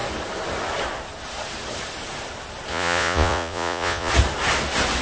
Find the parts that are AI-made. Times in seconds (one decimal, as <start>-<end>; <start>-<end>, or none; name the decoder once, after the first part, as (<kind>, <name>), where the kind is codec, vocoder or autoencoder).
2.7-4.1 (vocoder, Vocos)